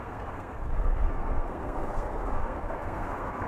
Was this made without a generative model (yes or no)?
no